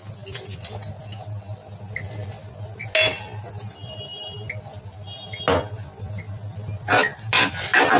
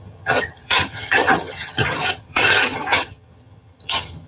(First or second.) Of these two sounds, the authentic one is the first